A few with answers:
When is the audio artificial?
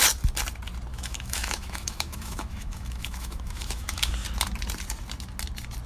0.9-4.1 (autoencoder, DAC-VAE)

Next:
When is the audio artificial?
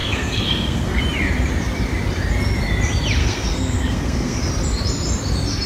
0.0-1.0 (codec, SNAC); 3.2-4.4